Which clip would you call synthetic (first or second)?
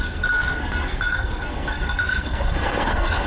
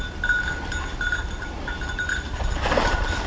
first